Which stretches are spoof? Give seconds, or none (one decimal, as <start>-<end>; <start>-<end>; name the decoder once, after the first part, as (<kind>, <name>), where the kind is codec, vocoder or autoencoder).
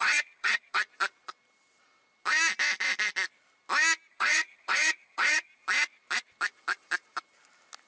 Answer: 0.0-0.8 (vocoder, HiFi-GAN); 4.1-5.5